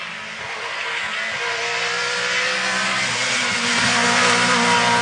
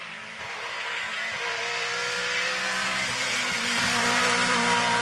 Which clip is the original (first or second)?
first